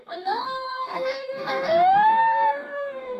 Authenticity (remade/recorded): remade